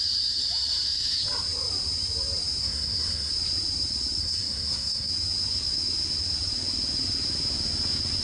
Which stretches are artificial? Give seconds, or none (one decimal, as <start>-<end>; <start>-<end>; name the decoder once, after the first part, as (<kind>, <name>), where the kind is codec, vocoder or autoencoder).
2.6-3.3 (codec, SNAC); 4.2-5.1